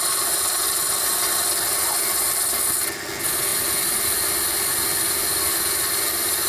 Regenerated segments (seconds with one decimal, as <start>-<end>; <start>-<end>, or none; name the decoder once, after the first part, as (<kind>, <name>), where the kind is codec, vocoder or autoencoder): none